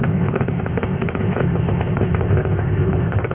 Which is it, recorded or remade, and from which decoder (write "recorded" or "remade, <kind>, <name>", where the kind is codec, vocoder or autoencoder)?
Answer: remade, codec, ZipCodec